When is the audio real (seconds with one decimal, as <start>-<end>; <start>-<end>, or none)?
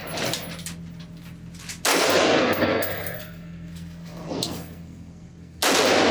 0.0-1.9; 5.6-6.1